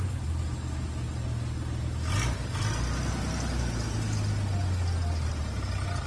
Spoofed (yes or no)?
no